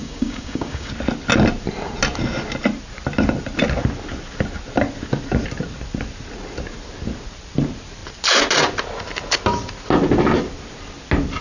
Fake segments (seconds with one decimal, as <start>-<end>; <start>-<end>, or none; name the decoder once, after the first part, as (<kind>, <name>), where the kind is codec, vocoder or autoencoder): 0.0-0.9 (codec, DAC)